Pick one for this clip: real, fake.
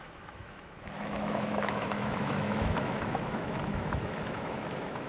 fake